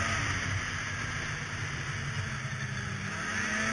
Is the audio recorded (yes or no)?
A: yes